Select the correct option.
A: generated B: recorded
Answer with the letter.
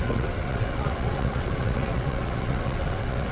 A